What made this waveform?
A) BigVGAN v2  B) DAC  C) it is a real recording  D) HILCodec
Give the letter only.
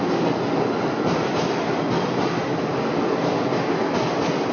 C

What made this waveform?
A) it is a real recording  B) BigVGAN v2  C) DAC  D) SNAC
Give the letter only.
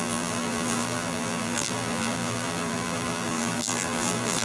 B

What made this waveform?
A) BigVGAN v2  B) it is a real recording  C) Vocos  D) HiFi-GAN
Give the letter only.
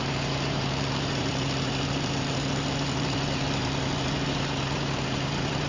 A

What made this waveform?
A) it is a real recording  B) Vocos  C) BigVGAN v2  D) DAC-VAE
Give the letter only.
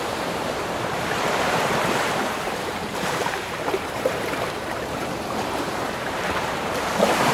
C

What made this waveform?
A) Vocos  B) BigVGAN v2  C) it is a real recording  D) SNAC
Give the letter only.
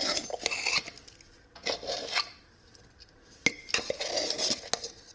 C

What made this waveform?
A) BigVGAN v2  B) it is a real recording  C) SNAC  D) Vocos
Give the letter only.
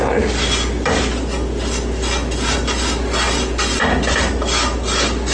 B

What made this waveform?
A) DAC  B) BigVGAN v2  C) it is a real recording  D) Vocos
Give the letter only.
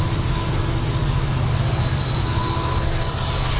C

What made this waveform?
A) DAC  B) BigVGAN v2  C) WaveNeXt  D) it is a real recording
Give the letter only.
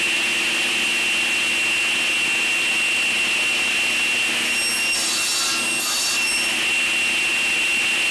D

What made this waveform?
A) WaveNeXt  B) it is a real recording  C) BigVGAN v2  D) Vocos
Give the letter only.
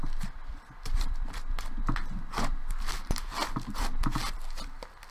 C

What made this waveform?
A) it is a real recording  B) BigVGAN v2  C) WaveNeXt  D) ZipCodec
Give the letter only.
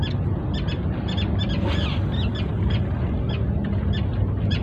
A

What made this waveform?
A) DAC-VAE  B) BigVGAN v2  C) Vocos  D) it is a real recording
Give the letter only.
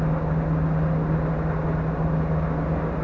D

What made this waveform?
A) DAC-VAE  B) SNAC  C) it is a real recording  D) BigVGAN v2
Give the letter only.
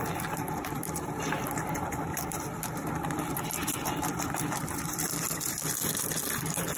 D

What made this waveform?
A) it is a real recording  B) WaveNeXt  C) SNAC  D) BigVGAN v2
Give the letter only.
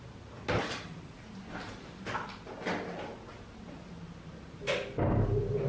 A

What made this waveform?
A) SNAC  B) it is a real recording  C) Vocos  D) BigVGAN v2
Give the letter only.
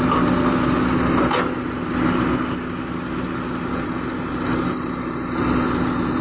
B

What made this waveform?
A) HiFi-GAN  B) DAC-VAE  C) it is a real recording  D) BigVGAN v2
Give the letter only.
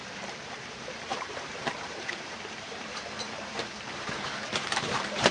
D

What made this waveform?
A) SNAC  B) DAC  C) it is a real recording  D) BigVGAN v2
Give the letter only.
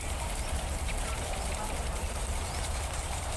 D